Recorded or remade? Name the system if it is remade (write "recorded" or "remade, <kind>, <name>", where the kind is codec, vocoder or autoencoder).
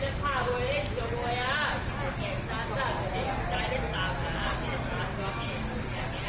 recorded